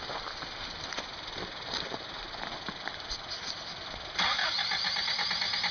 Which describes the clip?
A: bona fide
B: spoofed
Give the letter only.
A